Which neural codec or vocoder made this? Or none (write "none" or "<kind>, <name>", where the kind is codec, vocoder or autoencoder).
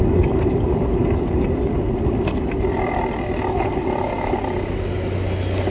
none